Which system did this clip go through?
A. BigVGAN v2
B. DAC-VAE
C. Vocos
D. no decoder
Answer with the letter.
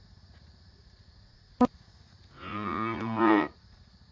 C